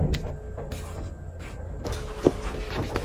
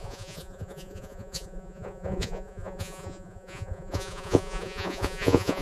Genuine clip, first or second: first